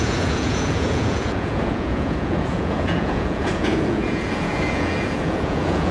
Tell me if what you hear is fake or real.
fake